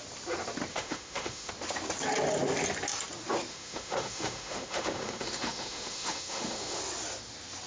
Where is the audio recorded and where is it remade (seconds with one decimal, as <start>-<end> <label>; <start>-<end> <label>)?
0.0-0.7 recorded; 0.7-1.5 remade; 1.5-3.5 recorded; 3.5-6.8 remade; 6.8-7.7 recorded